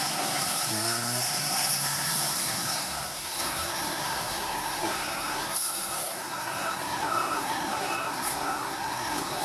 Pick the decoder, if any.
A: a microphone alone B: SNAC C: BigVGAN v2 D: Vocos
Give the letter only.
B